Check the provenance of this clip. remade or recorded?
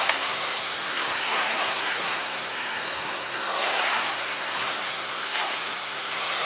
remade